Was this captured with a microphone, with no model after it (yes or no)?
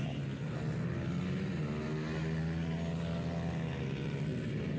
yes